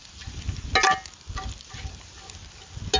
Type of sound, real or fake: real